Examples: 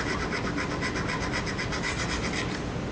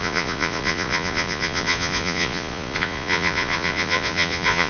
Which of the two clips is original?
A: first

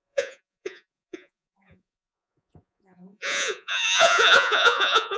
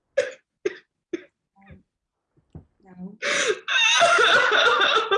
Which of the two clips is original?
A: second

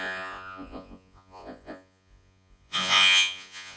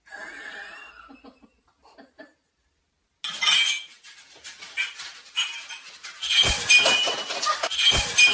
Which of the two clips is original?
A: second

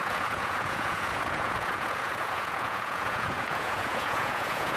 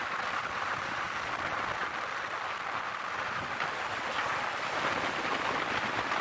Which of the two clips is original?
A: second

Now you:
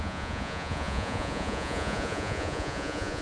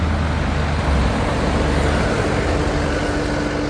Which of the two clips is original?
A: second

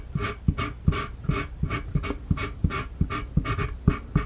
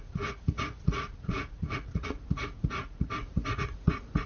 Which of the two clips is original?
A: first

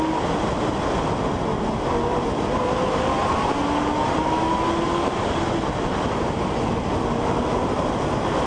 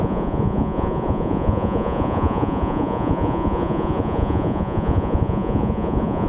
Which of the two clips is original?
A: first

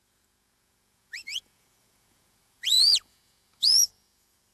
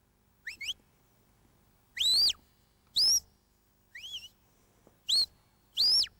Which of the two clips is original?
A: second